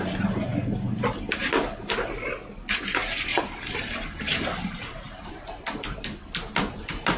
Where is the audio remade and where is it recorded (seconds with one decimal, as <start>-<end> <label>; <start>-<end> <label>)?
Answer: 0.0-3.3 recorded; 3.3-5.3 remade; 5.3-7.2 recorded